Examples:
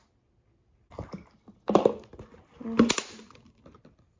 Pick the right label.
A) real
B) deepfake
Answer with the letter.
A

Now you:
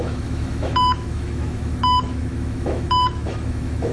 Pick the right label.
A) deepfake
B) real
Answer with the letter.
A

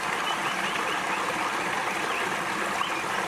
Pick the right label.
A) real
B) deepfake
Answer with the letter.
A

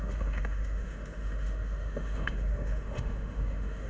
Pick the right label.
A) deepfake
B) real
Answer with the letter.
A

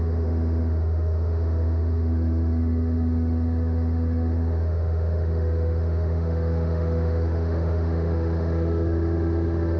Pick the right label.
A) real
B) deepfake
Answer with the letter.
B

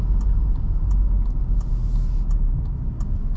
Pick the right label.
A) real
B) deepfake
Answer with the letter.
A